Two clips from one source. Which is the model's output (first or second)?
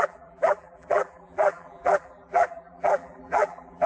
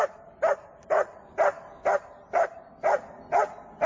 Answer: first